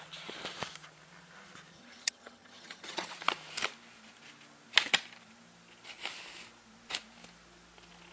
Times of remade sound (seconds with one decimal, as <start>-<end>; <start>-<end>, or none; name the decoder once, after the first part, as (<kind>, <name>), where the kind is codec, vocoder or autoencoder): 1.7-3.1 (vocoder, HiFi-GAN)